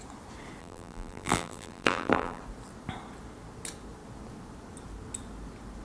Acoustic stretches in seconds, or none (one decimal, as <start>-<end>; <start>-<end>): 0.0-0.6; 2.4-5.8